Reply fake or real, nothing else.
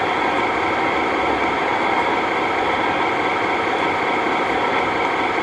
real